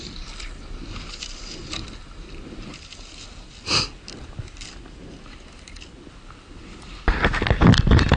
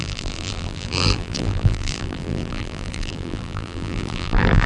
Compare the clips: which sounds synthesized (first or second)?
second